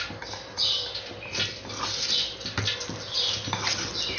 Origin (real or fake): real